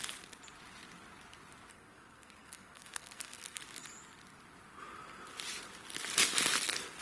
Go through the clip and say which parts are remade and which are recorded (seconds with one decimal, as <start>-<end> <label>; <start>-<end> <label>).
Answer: 0.0-1.7 recorded; 1.7-3.6 remade; 3.6-7.0 recorded